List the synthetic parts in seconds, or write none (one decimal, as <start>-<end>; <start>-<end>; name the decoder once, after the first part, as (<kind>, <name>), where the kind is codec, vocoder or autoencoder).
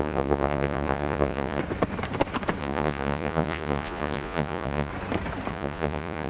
0.0-1.6 (vocoder, Vocos); 2.6-4.9; 5.5-6.3